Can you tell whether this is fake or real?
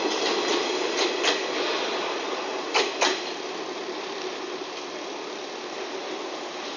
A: real